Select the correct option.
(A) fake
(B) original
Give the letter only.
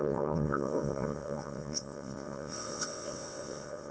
A